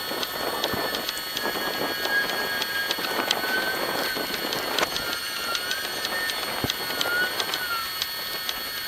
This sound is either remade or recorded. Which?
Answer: recorded